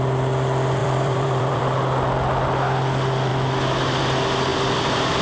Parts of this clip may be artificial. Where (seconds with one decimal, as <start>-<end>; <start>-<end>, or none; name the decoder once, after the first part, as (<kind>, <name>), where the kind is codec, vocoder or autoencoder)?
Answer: 0.8-1.6 (vocoder, BigVGAN v2); 4.5-5.2